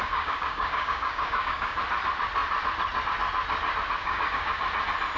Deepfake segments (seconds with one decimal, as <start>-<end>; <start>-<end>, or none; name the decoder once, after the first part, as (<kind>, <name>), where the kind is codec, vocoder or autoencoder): 0.0-1.8 (codec, DAC); 4.0-4.6